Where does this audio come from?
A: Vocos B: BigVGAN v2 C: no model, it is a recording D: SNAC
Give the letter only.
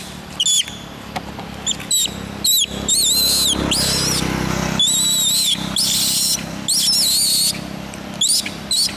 C